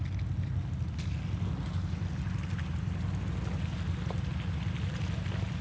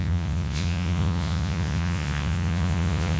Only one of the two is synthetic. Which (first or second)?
second